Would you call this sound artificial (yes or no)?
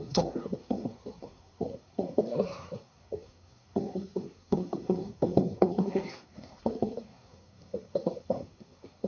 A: yes